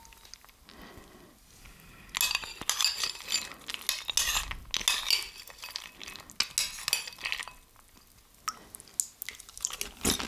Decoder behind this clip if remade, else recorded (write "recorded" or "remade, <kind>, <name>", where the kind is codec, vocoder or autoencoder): recorded